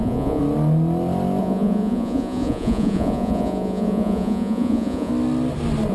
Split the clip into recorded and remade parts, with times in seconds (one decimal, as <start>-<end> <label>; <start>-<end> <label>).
0.0-0.4 remade; 0.4-1.4 recorded; 1.4-5.1 remade; 5.1-5.9 recorded